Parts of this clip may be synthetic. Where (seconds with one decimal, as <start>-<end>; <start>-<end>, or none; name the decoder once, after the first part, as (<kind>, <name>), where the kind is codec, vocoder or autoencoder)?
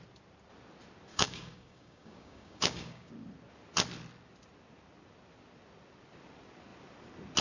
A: 1.1-3.1 (codec, DAC)